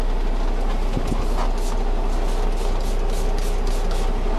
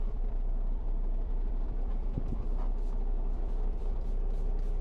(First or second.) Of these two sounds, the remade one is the second